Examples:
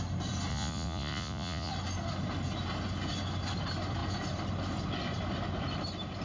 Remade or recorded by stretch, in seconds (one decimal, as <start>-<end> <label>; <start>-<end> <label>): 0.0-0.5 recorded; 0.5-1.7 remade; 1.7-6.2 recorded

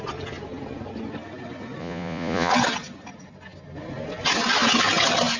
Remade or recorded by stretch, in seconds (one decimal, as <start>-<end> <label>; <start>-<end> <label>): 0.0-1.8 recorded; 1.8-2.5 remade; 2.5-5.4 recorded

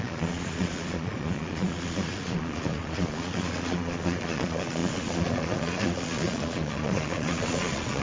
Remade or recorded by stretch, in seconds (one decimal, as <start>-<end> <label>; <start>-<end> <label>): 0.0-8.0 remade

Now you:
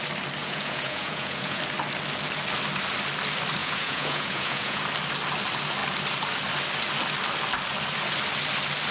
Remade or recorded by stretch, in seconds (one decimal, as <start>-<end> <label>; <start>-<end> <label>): 0.0-0.4 recorded; 0.4-1.6 remade; 1.6-3.6 recorded; 3.6-4.8 remade; 4.8-8.9 recorded

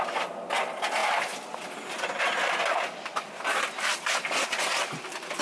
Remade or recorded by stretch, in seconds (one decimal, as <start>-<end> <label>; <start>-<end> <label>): 0.0-5.4 recorded

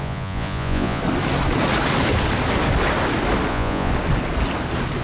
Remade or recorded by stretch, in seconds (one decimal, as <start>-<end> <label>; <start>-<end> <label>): 0.0-1.0 remade; 1.0-3.5 recorded; 3.5-3.9 remade; 3.9-5.0 recorded

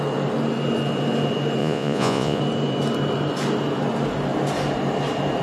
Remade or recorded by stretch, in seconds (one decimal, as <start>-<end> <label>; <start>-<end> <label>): 0.0-1.6 recorded; 1.6-2.4 remade; 2.4-5.4 recorded

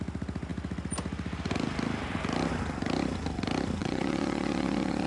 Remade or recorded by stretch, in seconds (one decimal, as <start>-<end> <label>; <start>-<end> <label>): 0.0-3.8 recorded; 3.8-5.1 remade